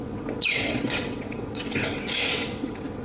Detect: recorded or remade remade